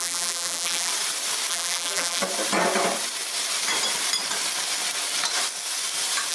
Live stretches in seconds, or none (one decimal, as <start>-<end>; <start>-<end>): 0.9-1.5; 2.2-6.3